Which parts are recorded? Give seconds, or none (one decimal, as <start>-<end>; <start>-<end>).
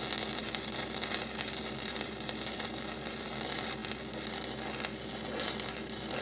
0.0-0.4; 3.3-6.2